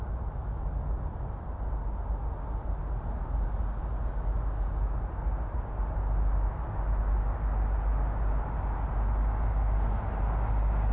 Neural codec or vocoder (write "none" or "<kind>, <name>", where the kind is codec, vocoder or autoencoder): none